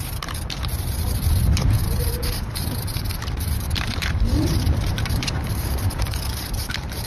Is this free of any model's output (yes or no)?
no